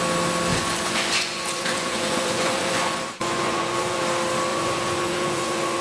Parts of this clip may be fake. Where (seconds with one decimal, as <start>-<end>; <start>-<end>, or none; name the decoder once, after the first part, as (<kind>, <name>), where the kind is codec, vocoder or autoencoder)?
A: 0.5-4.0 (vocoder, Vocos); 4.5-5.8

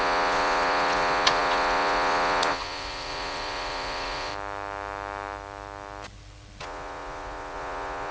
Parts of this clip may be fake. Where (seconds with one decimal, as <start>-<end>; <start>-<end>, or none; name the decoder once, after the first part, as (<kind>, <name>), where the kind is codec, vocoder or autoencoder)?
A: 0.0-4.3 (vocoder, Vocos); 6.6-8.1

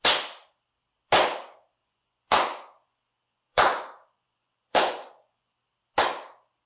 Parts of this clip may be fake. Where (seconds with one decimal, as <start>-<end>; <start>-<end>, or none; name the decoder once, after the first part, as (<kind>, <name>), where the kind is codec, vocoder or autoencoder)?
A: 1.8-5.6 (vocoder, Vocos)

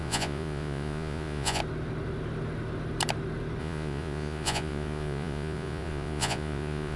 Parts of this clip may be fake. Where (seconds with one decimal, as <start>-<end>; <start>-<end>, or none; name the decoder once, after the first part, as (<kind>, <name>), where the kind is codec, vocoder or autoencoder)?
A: 0.0-1.6 (vocoder, Vocos); 3.6-7.0

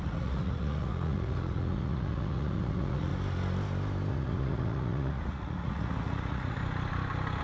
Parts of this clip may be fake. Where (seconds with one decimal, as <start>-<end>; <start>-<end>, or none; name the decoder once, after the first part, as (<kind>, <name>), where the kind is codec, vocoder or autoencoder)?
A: 0.0-3.1 (vocoder, Vocos); 4.1-6.6